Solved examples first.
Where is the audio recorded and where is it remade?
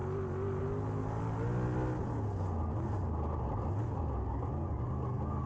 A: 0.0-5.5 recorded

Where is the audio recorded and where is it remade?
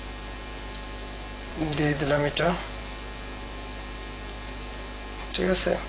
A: 0.0-1.5 recorded; 1.5-2.4 remade; 2.4-5.9 recorded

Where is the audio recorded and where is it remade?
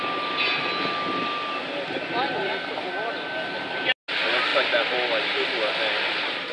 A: 0.0-6.5 recorded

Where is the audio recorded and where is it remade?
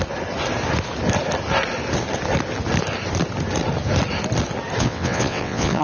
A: 0.0-4.8 recorded; 4.8-5.8 remade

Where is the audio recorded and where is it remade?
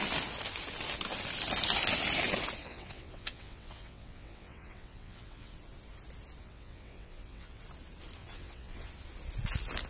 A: 0.0-2.6 recorded; 2.6-5.5 remade; 5.5-6.4 recorded; 6.4-7.6 remade; 7.6-8.2 recorded; 8.2-8.9 remade; 8.9-9.9 recorded